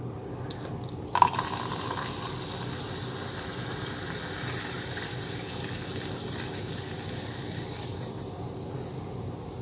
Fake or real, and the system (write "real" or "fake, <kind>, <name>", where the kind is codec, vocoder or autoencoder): real